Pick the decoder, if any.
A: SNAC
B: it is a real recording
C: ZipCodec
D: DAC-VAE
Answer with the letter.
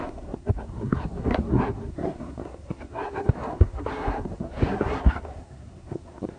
A